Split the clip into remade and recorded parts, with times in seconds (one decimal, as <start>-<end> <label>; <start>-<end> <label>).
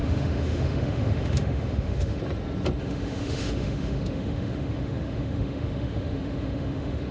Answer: 0.0-2.2 remade; 2.2-2.8 recorded; 2.8-7.1 remade